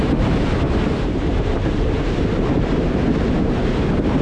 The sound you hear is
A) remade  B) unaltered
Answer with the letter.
A